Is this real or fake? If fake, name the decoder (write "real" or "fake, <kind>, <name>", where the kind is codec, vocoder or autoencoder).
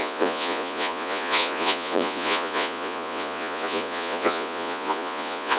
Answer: fake, vocoder, Vocos